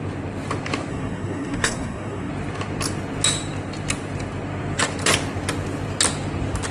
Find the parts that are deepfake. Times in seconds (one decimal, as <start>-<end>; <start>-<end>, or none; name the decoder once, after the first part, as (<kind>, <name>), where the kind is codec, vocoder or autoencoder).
0.9-2.3 (codec, SNAC)